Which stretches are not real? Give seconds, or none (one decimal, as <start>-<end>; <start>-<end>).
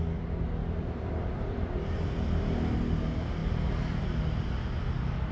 0.6-2.1